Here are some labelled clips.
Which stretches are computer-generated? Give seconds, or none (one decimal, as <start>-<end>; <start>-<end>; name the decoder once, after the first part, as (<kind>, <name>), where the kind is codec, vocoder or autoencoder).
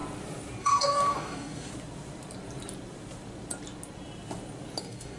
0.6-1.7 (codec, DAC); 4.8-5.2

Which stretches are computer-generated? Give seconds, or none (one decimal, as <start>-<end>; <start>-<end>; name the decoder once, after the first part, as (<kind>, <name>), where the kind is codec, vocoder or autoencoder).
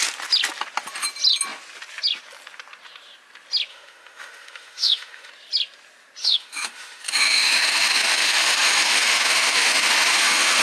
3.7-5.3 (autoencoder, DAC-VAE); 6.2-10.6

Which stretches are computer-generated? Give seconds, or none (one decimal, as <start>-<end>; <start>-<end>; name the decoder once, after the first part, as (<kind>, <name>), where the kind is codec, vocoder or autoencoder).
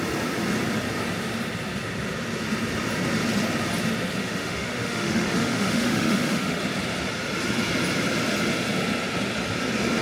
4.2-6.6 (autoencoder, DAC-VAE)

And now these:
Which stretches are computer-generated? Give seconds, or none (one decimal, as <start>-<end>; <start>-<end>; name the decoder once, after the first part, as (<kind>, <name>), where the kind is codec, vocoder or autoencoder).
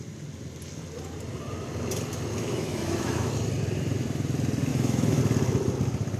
2.4-3.3 (autoencoder, DAC-VAE); 4.7-5.2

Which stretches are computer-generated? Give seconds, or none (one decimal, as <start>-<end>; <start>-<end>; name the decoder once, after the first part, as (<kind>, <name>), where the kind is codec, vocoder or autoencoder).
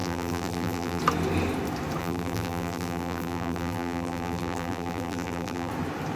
0.0-1.0 (vocoder, BigVGAN v2); 2.0-5.7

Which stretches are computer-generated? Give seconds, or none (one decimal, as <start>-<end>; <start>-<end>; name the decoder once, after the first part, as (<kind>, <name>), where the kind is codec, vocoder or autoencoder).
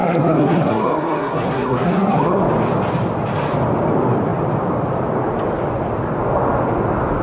0.0-2.4 (codec, SNAC)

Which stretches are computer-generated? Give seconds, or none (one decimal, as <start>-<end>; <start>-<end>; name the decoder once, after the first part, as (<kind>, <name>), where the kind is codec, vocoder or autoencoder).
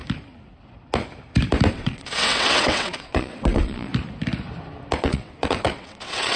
1.7-3.9 (vocoder, WaveNeXt); 5.0-6.4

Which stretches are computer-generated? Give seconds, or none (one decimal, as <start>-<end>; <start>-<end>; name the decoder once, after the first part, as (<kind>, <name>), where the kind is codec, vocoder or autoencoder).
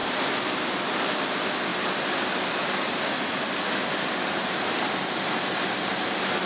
0.0-1.2 (vocoder, BigVGAN v2); 1.7-5.6